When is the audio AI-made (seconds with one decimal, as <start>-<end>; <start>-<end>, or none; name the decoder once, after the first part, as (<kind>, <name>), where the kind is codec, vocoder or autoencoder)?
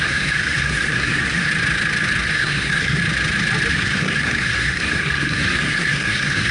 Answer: 0.0-1.5 (codec, SNAC); 2.3-3.0; 3.7-6.5